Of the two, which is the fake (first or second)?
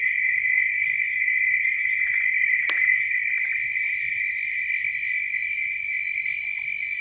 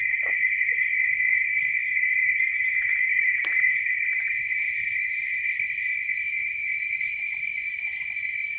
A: second